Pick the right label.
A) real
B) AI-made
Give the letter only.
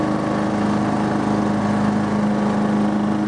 A